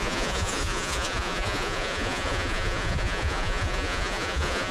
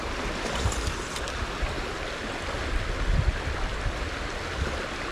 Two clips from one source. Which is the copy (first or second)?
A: first